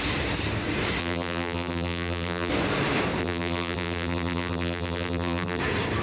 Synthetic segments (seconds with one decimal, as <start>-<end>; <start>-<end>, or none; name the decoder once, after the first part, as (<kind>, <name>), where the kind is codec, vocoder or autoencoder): 1.0-2.5 (vocoder, BigVGAN v2); 3.2-5.6